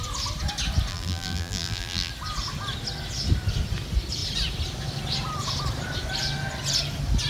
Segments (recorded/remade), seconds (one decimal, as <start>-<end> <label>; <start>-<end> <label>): 0.0-0.9 recorded; 0.9-2.1 remade; 2.1-7.3 recorded